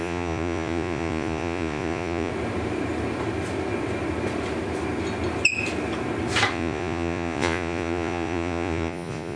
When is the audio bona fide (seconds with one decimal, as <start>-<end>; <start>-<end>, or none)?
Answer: 2.3-6.5